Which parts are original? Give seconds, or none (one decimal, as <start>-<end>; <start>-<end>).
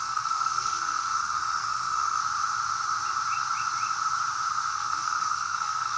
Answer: 2.2-4.7